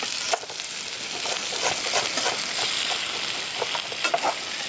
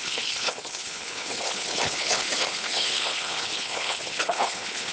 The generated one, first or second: second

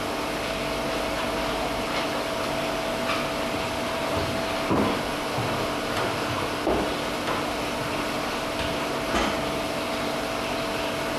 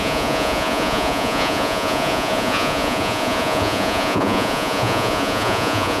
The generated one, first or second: second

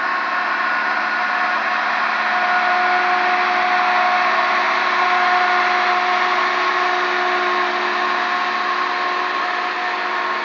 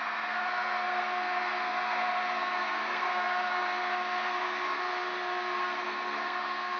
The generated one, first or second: second